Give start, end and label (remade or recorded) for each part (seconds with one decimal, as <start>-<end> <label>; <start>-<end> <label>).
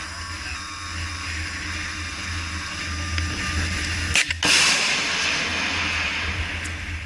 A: 0.0-7.1 recorded